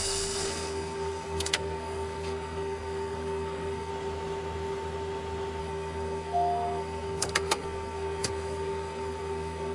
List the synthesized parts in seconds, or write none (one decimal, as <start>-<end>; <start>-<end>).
0.0-3.9; 5.6-9.7